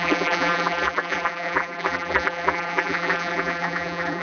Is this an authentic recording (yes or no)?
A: no